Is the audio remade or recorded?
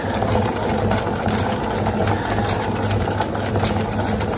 recorded